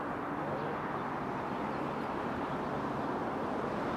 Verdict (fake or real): real